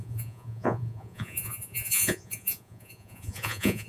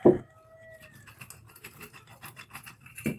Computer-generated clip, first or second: first